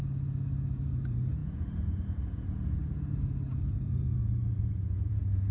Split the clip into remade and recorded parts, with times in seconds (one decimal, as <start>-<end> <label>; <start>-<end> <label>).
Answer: 0.0-5.5 remade